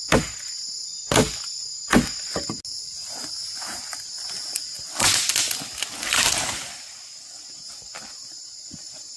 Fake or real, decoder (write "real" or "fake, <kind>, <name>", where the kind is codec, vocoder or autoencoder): real